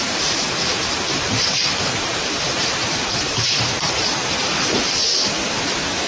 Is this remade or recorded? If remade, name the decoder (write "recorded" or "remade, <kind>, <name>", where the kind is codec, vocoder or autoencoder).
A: remade, vocoder, BigVGAN v2